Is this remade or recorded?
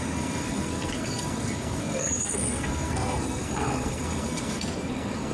remade